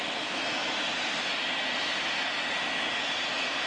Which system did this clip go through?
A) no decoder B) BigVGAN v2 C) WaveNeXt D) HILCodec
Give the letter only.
A